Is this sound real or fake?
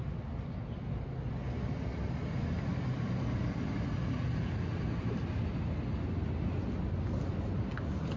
real